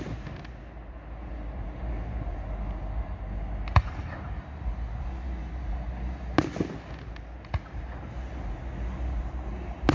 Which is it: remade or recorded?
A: recorded